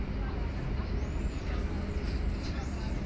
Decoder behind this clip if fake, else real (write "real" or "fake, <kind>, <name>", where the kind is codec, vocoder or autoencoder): real